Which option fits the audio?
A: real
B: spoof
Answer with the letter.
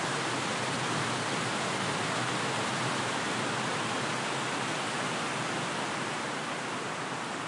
A